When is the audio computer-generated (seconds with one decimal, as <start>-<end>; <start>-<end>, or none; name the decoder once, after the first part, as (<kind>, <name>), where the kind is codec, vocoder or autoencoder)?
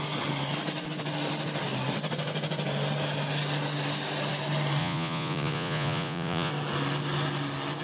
4.8-6.5 (vocoder, Vocos)